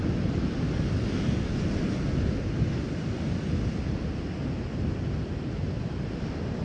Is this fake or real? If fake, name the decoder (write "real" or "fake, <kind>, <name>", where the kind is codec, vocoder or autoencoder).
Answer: real